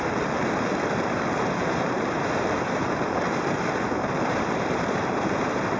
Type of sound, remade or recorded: remade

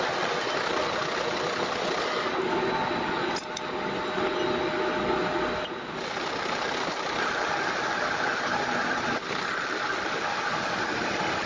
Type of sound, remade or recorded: recorded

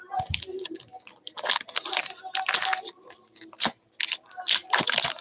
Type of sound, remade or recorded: recorded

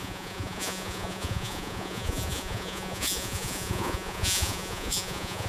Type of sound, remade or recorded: remade